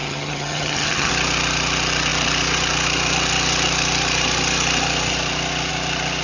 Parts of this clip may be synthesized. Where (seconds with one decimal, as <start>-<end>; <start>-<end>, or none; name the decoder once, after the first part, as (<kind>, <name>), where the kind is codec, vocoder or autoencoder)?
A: 0.0-1.1 (vocoder, HiFi-GAN)